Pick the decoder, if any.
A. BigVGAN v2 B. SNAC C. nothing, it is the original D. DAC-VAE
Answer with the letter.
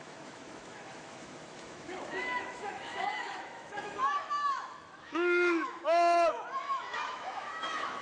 D